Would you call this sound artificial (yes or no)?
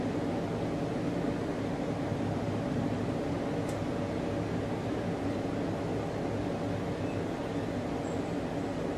no